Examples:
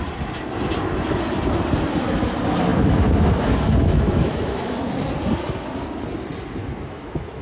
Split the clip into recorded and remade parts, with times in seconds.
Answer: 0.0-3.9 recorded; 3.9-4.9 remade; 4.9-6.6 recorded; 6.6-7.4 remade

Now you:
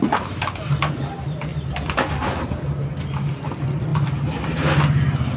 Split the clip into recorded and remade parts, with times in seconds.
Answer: 0.0-5.4 recorded

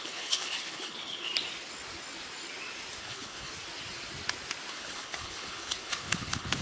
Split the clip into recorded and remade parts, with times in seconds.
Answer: 0.0-1.3 remade; 1.3-3.0 recorded; 3.0-3.5 remade; 3.5-4.7 recorded; 4.7-6.6 remade

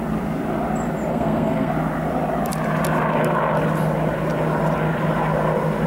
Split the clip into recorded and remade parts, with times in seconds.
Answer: 0.0-1.1 recorded; 1.1-1.7 remade; 1.7-5.9 recorded

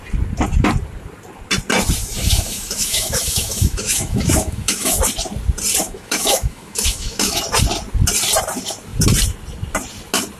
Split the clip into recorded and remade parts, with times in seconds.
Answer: 0.0-2.0 recorded; 2.0-5.0 remade; 5.0-5.8 recorded; 5.8-7.4 remade; 7.4-10.4 recorded

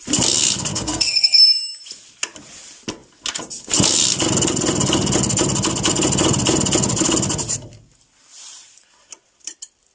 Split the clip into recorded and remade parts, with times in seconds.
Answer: 0.0-0.7 recorded; 0.7-1.4 remade; 1.4-9.9 recorded

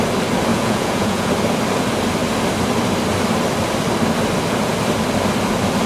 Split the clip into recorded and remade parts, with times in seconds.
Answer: 0.0-0.5 recorded; 0.5-1.3 remade; 1.3-5.9 recorded